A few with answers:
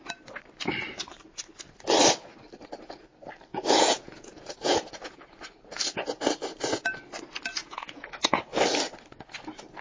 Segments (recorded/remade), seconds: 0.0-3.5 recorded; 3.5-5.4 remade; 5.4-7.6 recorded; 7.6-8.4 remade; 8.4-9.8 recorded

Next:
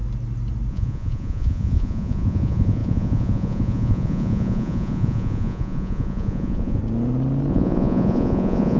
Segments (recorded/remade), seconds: 0.0-0.7 recorded; 0.7-6.8 remade; 6.8-7.5 recorded; 7.5-8.8 remade

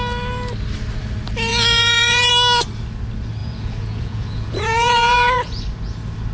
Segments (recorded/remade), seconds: 0.0-1.5 recorded; 1.5-2.3 remade; 2.3-3.4 recorded; 3.4-5.6 remade; 5.6-6.3 recorded

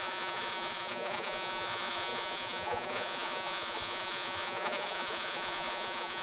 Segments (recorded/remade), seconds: 0.0-6.2 remade

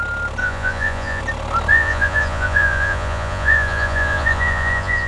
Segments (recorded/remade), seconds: 0.0-0.4 recorded; 0.4-1.2 remade; 1.2-1.7 recorded; 1.7-5.1 remade

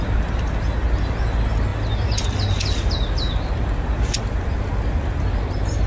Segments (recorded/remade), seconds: 0.0-5.9 recorded